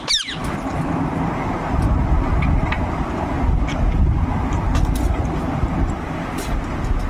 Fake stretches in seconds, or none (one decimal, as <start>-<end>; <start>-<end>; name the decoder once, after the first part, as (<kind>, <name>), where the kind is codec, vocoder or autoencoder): none